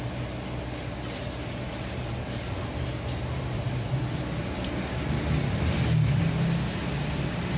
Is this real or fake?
real